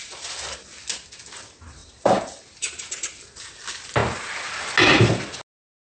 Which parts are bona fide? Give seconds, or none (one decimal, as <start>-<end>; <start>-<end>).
0.0-5.8